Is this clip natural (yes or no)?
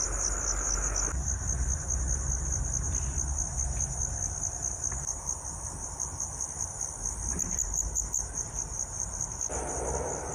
yes